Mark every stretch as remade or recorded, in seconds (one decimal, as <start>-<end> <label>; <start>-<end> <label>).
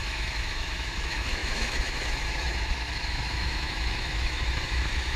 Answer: 0.0-5.2 remade